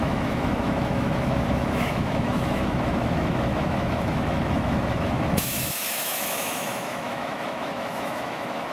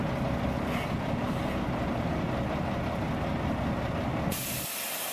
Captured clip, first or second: second